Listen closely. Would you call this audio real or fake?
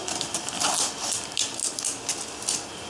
real